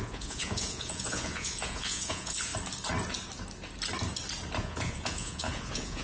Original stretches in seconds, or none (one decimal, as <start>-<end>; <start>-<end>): 2.5-4.6